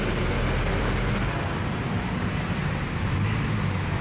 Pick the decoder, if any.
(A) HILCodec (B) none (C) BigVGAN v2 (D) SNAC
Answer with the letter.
B